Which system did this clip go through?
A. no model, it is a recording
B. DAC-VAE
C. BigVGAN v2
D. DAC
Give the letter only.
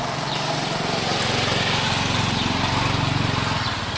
A